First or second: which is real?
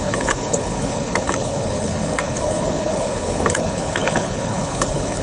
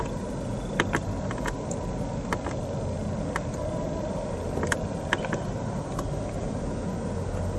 second